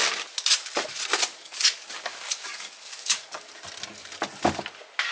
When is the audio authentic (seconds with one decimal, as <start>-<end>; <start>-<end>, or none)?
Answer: 0.0-1.3; 3.5-5.1

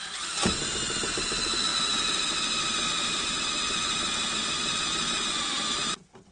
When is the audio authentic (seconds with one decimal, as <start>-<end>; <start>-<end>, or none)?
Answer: 0.0-6.3

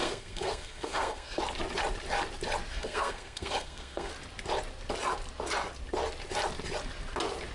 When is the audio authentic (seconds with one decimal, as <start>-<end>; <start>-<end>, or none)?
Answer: 1.4-2.7; 4.1-7.5

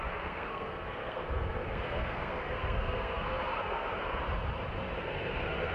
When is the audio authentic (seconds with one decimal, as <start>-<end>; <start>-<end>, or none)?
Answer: 4.2-5.0

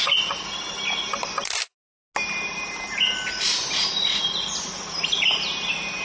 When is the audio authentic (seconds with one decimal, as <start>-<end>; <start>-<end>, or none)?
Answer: 0.0-6.0